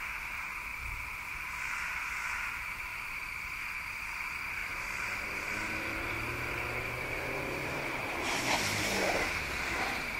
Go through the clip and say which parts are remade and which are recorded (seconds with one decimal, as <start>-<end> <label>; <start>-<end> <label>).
0.0-0.7 recorded; 0.7-1.6 remade; 1.6-2.9 recorded; 2.9-3.6 remade; 3.6-4.6 recorded; 4.6-8.6 remade; 8.6-10.2 recorded

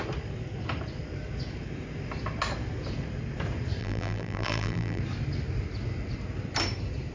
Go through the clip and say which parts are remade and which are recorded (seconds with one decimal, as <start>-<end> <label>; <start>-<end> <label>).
0.0-3.8 recorded; 3.8-5.0 remade; 5.0-7.1 recorded

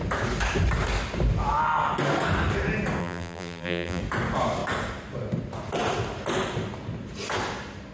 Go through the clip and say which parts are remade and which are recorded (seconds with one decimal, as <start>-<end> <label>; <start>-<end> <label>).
0.0-3.0 recorded; 3.0-4.0 remade; 4.0-7.9 recorded

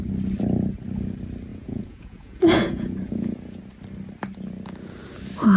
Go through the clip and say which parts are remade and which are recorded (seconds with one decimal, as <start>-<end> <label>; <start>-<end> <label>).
0.0-1.5 recorded; 1.5-3.6 remade; 3.6-5.6 recorded

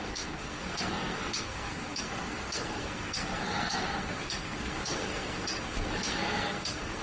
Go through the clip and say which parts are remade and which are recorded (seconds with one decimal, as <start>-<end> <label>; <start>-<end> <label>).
0.0-7.0 remade